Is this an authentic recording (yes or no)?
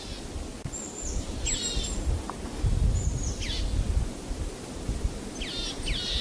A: yes